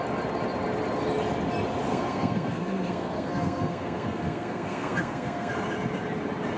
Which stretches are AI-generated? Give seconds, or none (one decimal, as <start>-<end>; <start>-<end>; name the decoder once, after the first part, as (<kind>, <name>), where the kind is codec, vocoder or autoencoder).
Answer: 1.9-5.5 (codec, SNAC)